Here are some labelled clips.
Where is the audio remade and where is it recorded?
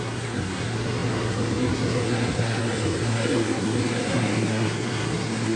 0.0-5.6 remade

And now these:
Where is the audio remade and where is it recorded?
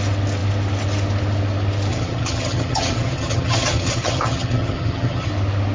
0.0-1.9 recorded; 1.9-5.3 remade; 5.3-5.7 recorded